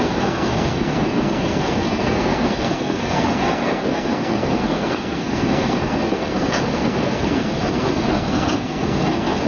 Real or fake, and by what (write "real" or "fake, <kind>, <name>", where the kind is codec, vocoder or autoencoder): fake, codec, SNAC